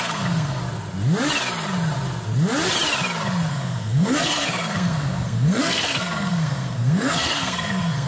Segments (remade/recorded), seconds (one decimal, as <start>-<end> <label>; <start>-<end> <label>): 0.0-0.6 remade; 0.6-3.5 recorded; 3.5-8.1 remade